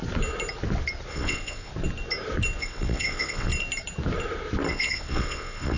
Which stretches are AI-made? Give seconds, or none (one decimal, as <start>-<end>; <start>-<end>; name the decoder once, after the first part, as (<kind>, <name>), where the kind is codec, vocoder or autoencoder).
1.1-1.7 (vocoder, WaveNeXt); 2.6-3.5; 4.7-5.8